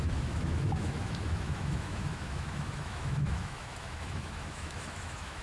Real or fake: fake